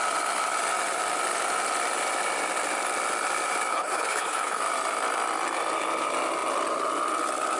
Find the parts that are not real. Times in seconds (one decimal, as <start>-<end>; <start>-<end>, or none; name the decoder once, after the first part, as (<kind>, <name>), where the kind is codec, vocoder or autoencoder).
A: 3.7-4.6 (codec, HILCodec)